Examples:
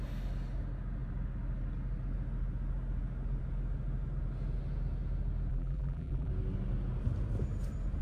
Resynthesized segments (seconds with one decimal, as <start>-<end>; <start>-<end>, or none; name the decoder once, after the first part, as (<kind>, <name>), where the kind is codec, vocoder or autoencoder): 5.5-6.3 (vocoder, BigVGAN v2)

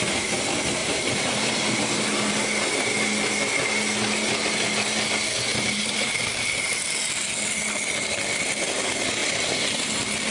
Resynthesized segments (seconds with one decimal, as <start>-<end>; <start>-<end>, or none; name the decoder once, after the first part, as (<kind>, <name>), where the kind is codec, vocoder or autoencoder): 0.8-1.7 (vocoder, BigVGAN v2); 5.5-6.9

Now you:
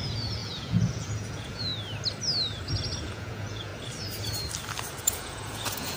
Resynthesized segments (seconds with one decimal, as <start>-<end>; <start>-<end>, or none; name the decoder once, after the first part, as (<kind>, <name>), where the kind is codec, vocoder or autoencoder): 0.0-1.7 (vocoder, Vocos); 3.0-3.7; 5.0-6.0

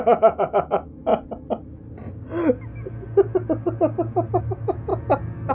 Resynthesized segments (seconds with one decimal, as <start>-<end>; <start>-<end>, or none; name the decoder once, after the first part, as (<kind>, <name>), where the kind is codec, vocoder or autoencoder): 0.0-1.1 (autoencoder, DAC-VAE); 4.4-4.9

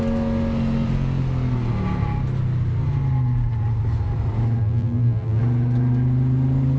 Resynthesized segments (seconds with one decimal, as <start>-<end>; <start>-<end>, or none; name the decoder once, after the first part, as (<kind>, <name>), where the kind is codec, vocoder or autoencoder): 4.6-5.4 (vocoder, BigVGAN v2)